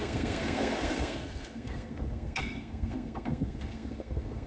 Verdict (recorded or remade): remade